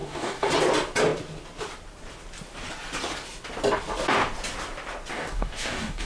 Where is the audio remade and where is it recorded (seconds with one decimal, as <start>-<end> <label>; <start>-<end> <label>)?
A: 0.0-0.5 remade; 0.5-5.1 recorded; 5.1-6.1 remade